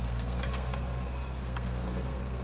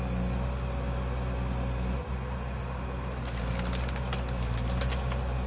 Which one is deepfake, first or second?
first